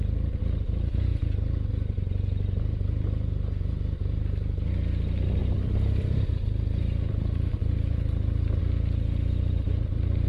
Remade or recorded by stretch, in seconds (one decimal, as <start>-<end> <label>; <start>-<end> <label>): 0.0-5.4 recorded; 5.4-8.6 remade; 8.6-10.3 recorded